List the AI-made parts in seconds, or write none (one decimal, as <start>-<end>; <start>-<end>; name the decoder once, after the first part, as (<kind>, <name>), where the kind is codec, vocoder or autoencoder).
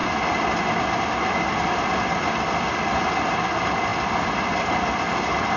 none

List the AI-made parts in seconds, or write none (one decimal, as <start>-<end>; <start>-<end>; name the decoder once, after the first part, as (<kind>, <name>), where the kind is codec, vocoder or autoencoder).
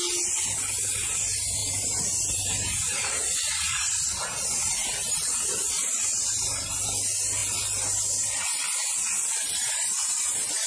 1.6-6.7 (vocoder, BigVGAN v2)